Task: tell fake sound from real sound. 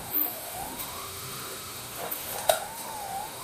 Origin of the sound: fake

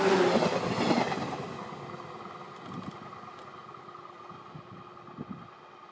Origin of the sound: real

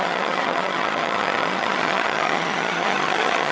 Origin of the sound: fake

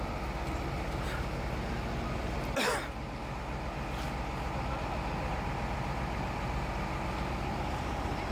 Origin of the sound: real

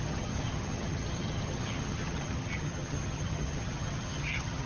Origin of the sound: fake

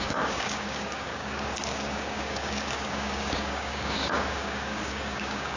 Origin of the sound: fake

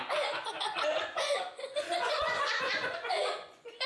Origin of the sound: fake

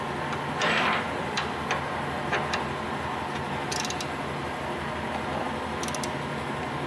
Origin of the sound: real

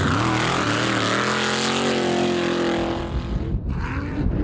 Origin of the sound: real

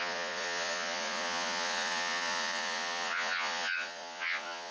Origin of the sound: fake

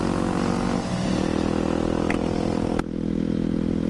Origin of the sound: real